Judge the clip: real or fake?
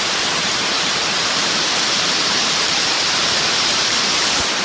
fake